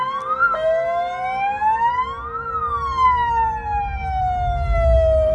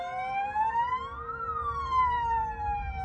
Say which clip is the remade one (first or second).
second